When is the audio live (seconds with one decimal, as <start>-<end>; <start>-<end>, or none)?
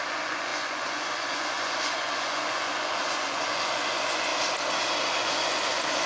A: 4.3-5.1